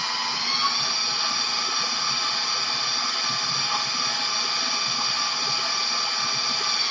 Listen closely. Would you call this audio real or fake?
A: real